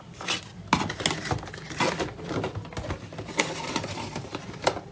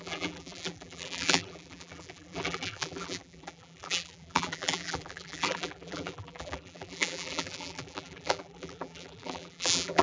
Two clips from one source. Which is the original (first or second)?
first